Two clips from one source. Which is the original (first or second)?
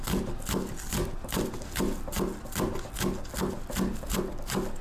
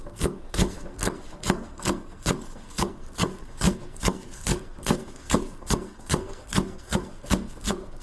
first